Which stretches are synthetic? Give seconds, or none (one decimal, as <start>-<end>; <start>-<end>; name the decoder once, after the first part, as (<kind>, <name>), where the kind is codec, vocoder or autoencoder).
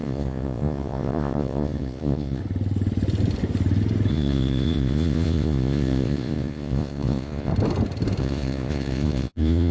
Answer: 0.0-2.4 (vocoder, Vocos); 4.1-7.5; 8.2-9.7